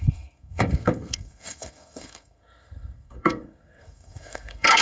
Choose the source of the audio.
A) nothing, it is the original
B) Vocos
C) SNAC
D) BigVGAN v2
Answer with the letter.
C